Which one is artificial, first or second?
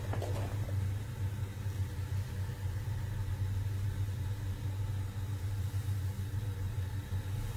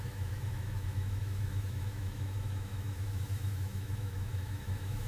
second